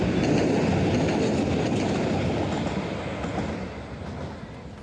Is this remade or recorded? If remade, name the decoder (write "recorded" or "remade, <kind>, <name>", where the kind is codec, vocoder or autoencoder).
recorded